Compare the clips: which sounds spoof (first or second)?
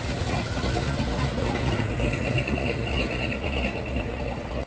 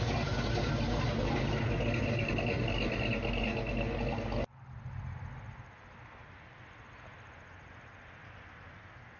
first